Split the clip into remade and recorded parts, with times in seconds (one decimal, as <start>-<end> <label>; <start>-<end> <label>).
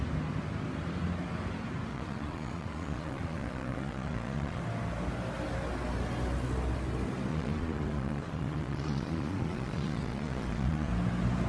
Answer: 0.0-1.9 recorded; 1.9-4.6 remade; 4.6-7.3 recorded; 7.3-10.9 remade; 10.9-11.5 recorded